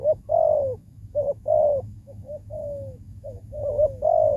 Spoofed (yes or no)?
yes